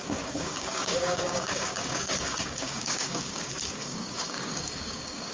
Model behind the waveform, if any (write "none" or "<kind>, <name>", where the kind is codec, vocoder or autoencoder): codec, DAC